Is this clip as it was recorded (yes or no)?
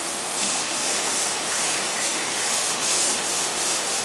no